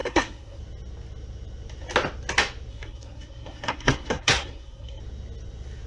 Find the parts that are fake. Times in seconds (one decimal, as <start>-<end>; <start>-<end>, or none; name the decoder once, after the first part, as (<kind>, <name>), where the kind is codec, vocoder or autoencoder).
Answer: 0.0-0.6 (codec, SNAC); 2.7-5.0

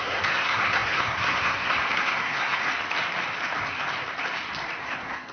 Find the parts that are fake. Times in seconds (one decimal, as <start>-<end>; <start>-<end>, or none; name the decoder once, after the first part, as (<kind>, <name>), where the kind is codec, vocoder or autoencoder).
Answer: 0.0-2.6 (codec, SNAC); 4.8-5.3

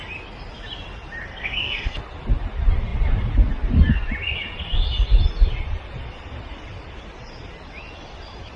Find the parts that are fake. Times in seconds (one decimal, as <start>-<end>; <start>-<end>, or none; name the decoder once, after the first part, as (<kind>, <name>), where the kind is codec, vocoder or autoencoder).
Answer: 1.3-2.0 (codec, SNAC)

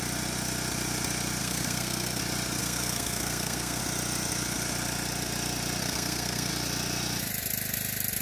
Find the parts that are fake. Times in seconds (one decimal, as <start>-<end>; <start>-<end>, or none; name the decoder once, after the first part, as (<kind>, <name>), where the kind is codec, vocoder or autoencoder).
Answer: 1.4-2.2 (codec, SNAC); 2.6-3.8; 5.8-6.5

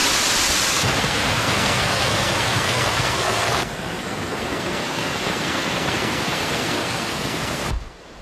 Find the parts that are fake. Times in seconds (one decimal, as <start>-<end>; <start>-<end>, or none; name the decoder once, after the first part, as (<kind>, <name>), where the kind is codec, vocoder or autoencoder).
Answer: 0.7-8.2 (codec, SNAC)

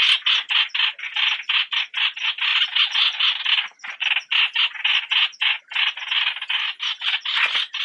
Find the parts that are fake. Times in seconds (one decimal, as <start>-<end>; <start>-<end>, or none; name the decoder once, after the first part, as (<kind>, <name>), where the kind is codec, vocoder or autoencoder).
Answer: none